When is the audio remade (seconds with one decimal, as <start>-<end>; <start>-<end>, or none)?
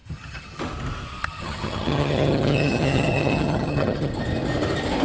0.0-0.6; 1.2-4.1